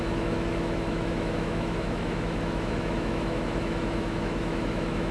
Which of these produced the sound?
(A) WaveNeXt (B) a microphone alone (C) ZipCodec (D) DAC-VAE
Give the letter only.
D